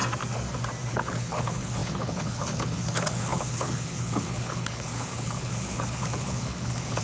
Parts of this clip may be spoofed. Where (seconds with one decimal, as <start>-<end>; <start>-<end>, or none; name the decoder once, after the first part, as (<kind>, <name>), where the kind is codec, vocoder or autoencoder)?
0.9-7.0 (codec, HILCodec)